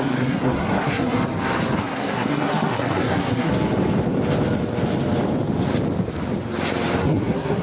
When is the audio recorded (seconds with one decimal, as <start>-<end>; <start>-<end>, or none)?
1.2-1.8; 3.5-7.0